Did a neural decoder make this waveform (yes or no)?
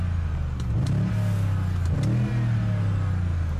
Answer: no